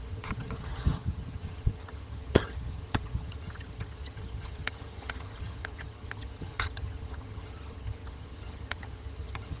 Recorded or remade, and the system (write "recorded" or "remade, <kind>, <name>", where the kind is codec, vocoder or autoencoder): remade, vocoder, HiFi-GAN